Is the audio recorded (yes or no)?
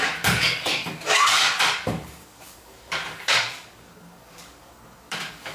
no